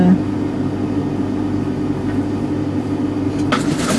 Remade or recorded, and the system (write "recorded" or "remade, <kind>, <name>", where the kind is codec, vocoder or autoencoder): recorded